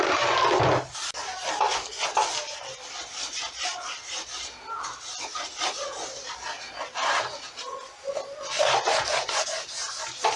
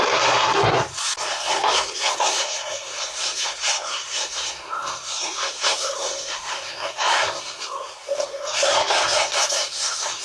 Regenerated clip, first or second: second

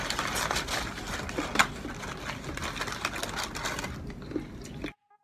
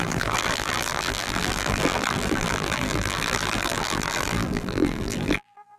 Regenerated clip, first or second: second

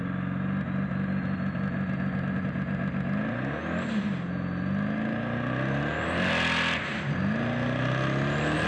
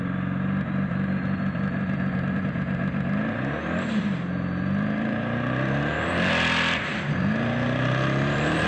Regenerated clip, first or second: second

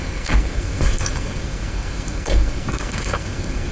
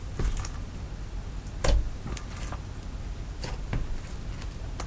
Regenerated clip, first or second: first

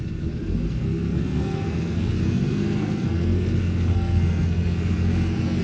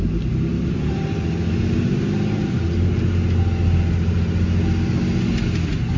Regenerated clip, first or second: first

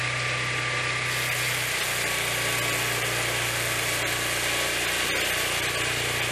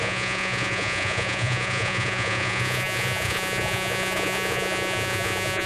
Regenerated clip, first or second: second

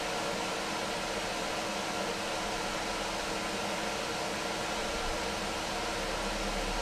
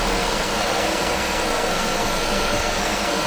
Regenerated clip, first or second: second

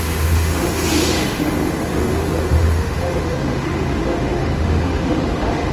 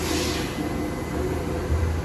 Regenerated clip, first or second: first